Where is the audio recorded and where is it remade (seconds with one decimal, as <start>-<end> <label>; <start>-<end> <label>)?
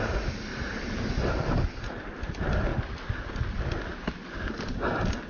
0.0-5.3 recorded